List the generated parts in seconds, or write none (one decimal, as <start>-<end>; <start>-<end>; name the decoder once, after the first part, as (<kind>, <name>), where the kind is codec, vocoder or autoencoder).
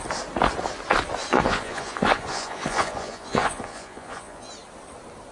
1.3-4.5 (vocoder, Vocos)